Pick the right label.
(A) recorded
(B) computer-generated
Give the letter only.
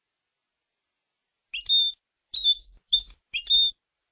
A